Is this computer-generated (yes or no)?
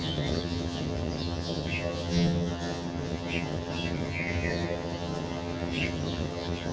yes